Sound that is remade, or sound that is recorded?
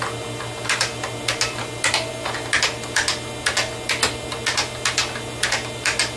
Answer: recorded